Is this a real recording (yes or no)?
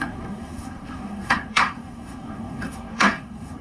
no